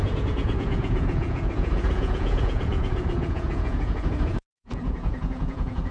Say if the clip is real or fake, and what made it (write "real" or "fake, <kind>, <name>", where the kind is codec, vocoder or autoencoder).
fake, vocoder, Vocos